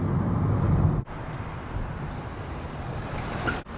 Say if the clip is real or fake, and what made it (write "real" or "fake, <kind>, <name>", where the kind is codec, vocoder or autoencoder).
fake, vocoder, BigVGAN v2